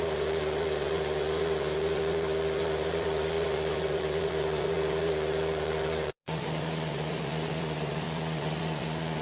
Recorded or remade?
remade